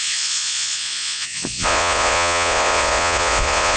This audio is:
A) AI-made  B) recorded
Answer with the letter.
A